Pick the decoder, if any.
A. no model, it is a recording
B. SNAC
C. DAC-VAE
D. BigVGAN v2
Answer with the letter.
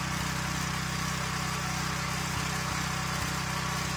A